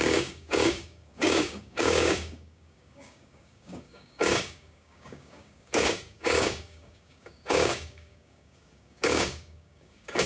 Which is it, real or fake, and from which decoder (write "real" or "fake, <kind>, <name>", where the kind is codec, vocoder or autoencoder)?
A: fake, codec, DAC